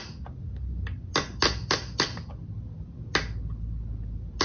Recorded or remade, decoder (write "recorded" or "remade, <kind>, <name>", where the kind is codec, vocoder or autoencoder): recorded